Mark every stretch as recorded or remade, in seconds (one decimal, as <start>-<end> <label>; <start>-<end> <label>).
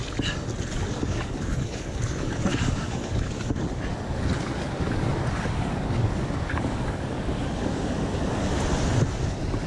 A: 0.0-1.0 recorded; 1.0-3.5 remade; 3.5-3.9 recorded; 3.9-8.5 remade; 8.5-9.7 recorded